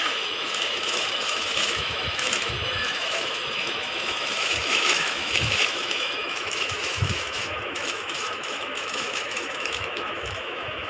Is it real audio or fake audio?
fake